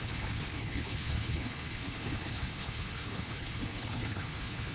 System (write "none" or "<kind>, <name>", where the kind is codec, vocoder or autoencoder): codec, HILCodec